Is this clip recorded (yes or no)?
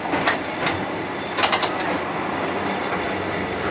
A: yes